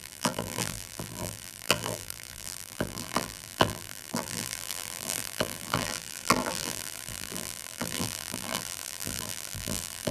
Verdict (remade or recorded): remade